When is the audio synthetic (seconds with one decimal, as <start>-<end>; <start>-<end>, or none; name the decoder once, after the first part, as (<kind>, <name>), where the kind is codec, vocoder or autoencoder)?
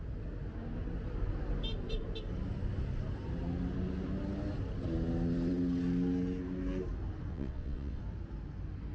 7.3-8.0 (vocoder, WaveNeXt)